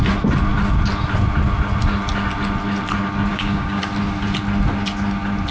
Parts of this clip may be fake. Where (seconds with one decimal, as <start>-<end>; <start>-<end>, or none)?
3.3-3.8